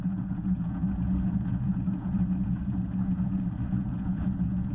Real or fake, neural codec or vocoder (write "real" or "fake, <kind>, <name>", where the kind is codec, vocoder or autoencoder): fake, vocoder, Vocos